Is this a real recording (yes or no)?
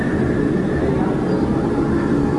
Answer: yes